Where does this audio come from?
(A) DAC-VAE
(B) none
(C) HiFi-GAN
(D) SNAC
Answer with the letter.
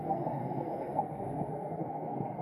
D